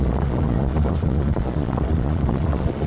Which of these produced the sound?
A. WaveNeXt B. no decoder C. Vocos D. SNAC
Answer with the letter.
C